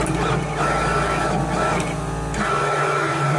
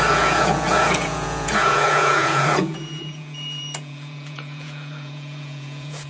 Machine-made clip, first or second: second